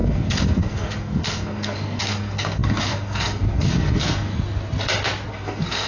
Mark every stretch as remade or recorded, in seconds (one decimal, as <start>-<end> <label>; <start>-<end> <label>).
0.0-4.3 remade; 4.3-5.3 recorded; 5.3-5.9 remade